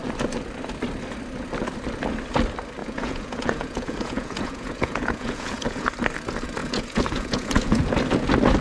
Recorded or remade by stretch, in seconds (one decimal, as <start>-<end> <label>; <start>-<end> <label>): 0.0-2.8 recorded; 2.8-5.9 remade; 5.9-6.6 recorded; 6.6-7.9 remade; 7.9-8.6 recorded